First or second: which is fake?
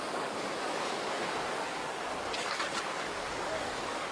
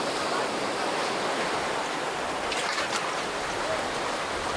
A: first